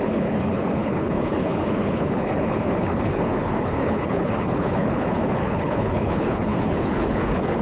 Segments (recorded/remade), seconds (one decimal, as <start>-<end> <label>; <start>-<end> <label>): 0.0-7.6 remade